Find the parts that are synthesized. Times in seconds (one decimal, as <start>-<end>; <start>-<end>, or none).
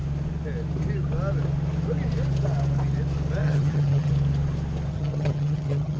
3.4-4.1; 4.9-6.0